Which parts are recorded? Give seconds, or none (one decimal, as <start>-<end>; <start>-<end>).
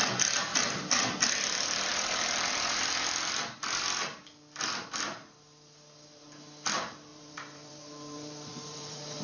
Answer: 0.0-0.5; 1.1-1.9; 2.8-7.1